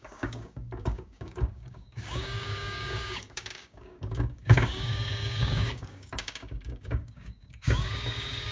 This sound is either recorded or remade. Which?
remade